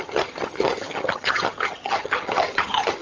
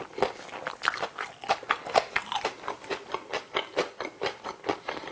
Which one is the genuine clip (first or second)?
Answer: second